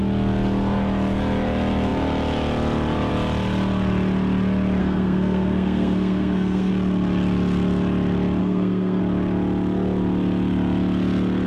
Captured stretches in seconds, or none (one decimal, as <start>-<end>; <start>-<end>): 0.0-4.8; 6.7-8.4; 9.0-11.5